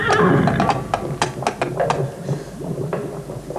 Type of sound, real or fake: real